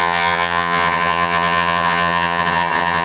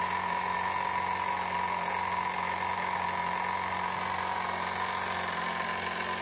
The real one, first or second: second